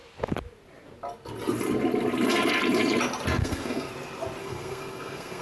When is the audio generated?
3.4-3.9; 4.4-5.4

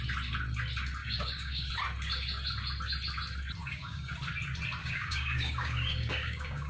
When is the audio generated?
1.0-1.7; 3.6-4.1; 4.8-6.7